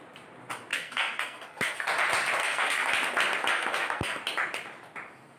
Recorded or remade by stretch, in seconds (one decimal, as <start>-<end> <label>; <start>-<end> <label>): 0.0-0.7 recorded; 0.7-1.9 remade; 1.9-2.4 recorded; 2.4-2.9 remade; 2.9-3.5 recorded; 3.5-4.2 remade; 4.2-5.4 recorded